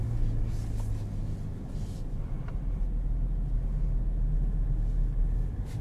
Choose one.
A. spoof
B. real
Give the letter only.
B